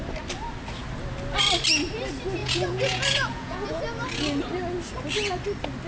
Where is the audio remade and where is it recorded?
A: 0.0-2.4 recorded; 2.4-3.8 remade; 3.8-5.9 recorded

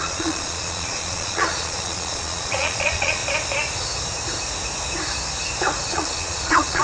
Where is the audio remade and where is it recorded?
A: 0.0-3.2 remade; 3.2-5.9 recorded; 5.9-6.8 remade

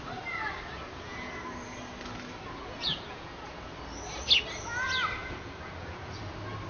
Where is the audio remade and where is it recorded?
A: 0.0-0.7 recorded; 0.7-1.3 remade; 1.3-2.6 recorded; 2.6-3.7 remade; 3.7-5.2 recorded; 5.2-6.2 remade; 6.2-6.7 recorded

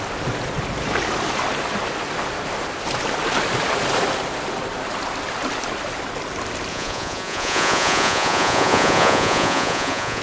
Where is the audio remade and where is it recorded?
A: 0.0-6.7 recorded; 6.7-10.2 remade

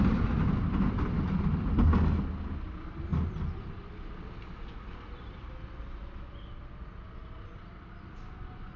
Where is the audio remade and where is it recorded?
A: 0.0-8.8 recorded

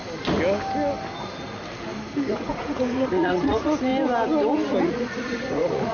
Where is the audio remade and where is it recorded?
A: 0.0-2.3 recorded; 2.3-3.9 remade; 3.9-4.8 recorded; 4.8-5.9 remade